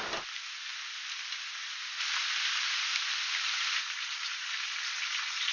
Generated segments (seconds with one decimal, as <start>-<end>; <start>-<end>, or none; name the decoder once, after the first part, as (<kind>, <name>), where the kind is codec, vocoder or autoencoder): none